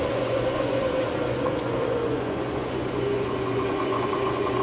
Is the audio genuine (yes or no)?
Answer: no